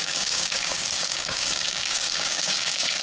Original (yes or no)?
no